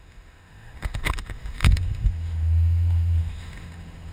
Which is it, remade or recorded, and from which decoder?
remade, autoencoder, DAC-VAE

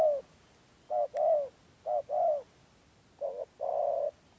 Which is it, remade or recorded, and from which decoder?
recorded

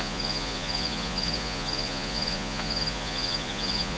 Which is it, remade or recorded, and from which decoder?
remade, vocoder, Vocos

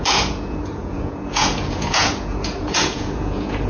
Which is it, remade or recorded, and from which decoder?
remade, vocoder, Vocos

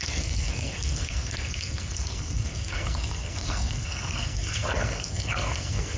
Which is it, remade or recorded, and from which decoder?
remade, codec, SNAC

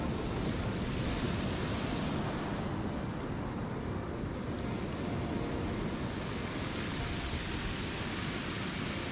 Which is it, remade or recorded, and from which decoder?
recorded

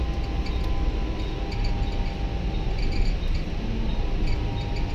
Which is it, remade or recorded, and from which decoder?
recorded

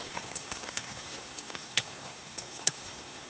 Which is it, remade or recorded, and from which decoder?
remade, codec, SNAC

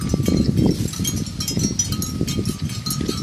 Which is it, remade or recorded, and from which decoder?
recorded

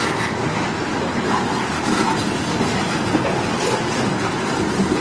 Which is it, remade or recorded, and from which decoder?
recorded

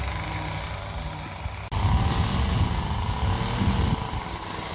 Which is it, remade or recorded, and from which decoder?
recorded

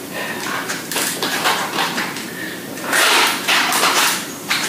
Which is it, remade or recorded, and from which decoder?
remade, vocoder, BigVGAN v2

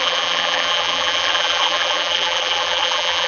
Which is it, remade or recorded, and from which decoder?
remade, vocoder, BigVGAN v2